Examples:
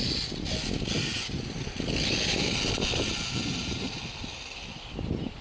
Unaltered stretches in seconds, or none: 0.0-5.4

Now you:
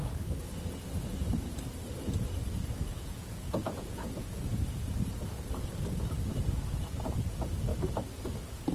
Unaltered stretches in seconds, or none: 0.0-2.9; 4.1-8.7

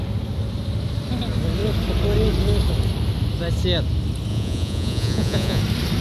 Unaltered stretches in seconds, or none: 0.0-4.3; 5.6-6.0

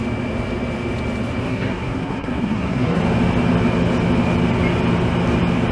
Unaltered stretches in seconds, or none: 0.0-1.4; 3.0-5.7